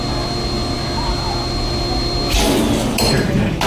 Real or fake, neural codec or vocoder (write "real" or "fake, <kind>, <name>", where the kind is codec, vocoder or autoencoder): real